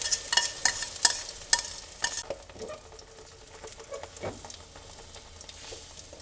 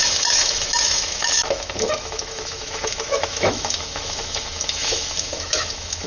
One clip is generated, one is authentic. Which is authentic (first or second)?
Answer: first